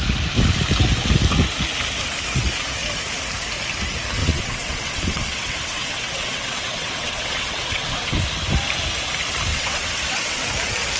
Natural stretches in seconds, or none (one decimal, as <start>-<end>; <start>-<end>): 0.0-4.2; 8.2-9.5; 10.5-11.0